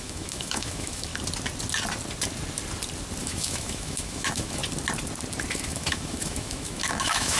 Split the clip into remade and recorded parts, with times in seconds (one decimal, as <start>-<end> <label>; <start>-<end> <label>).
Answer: 0.0-1.1 remade; 1.1-3.2 recorded; 3.2-4.6 remade; 4.6-5.5 recorded; 5.5-7.4 remade

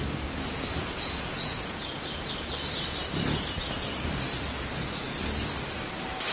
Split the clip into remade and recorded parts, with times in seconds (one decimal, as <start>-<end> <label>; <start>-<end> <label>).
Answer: 0.0-0.8 recorded; 0.8-2.0 remade; 2.0-6.3 recorded

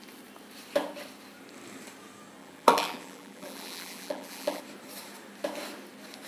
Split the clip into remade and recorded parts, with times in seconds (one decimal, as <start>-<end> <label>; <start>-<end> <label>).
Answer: 0.0-2.4 recorded; 2.4-4.6 remade; 4.6-6.3 recorded

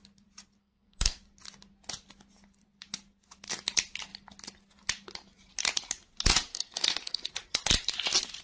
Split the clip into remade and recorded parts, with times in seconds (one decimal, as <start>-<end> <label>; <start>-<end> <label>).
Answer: 0.0-0.6 recorded; 0.6-1.2 remade; 1.2-6.5 recorded; 6.5-7.3 remade; 7.3-8.4 recorded

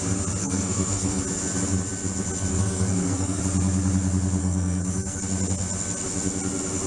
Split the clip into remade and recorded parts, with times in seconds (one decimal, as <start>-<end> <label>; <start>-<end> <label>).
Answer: 0.0-0.4 recorded; 0.4-1.2 remade; 1.2-2.5 recorded; 2.5-3.4 remade; 3.4-4.4 recorded; 4.4-5.2 remade; 5.2-6.9 recorded